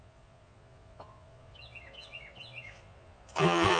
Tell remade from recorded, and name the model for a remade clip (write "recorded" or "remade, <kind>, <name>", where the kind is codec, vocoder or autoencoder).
remade, vocoder, Vocos